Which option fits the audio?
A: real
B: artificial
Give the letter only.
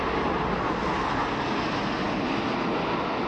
A